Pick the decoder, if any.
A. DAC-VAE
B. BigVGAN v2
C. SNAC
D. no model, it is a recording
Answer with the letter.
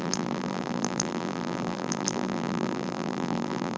B